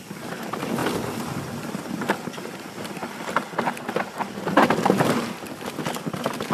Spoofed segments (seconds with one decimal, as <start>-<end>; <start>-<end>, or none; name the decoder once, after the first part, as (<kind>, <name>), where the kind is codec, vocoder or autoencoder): none